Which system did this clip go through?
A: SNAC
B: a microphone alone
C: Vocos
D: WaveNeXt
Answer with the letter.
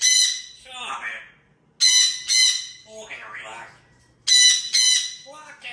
B